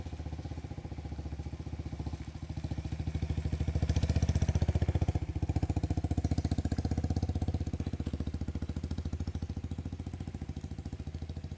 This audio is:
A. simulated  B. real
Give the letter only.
B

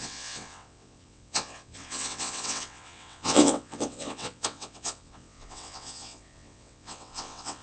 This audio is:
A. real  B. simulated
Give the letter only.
B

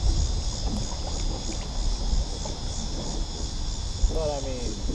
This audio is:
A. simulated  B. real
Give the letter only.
B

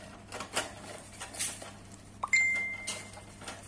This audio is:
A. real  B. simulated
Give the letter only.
A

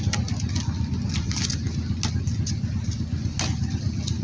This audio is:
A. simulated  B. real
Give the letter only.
B